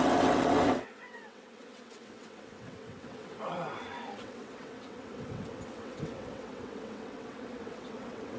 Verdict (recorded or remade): remade